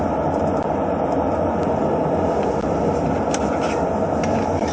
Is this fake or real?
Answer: real